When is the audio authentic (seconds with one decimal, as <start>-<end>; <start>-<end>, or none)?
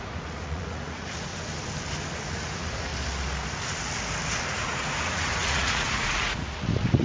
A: 1.3-2.2; 2.9-4.5